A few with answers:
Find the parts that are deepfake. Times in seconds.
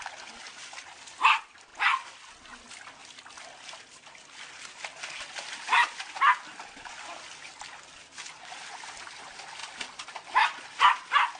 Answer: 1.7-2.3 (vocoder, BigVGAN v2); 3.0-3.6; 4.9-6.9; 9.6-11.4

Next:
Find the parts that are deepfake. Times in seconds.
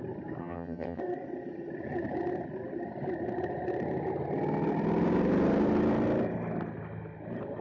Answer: 0.4-1.0 (vocoder, HiFi-GAN)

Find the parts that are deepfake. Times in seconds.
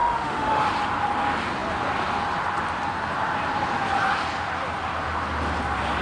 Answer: 0.0-0.7 (autoencoder, DAC-VAE)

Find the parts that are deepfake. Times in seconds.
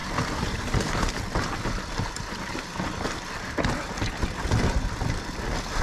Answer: none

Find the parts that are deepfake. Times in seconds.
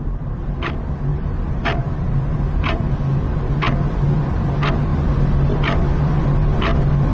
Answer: 1.1-3.2 (vocoder, BigVGAN v2)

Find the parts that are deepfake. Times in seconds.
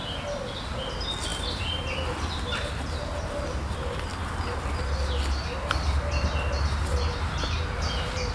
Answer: none